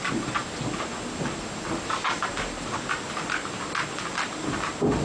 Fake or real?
real